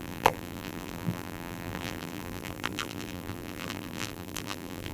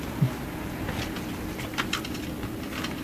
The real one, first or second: second